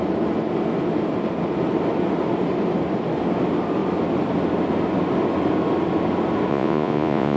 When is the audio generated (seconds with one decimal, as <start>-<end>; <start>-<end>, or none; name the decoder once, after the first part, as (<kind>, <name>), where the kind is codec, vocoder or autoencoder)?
6.5-7.4 (vocoder, Vocos)